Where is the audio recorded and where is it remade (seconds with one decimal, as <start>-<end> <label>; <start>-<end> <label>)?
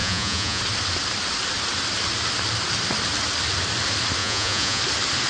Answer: 0.0-0.6 remade; 0.6-4.2 recorded; 4.2-4.8 remade; 4.8-5.3 recorded